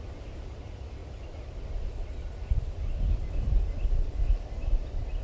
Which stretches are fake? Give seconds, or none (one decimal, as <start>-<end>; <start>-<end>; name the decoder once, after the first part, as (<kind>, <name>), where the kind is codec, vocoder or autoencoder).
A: none